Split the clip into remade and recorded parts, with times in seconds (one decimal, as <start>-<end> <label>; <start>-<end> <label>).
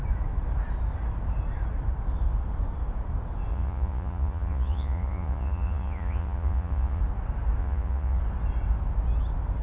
0.0-3.5 recorded; 3.5-7.0 remade; 7.0-7.6 recorded; 7.6-8.2 remade; 8.2-9.6 recorded